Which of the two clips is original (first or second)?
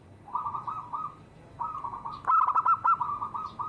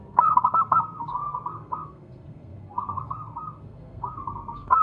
first